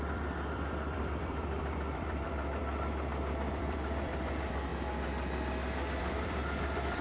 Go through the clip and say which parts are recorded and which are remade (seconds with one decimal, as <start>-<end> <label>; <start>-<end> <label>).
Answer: 0.0-2.6 remade; 2.6-3.5 recorded; 3.5-4.7 remade; 4.7-6.0 recorded; 6.0-7.0 remade